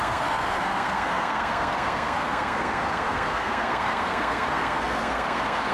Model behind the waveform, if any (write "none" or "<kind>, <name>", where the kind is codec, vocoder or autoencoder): codec, SNAC